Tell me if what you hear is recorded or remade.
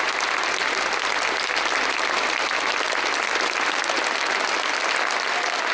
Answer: recorded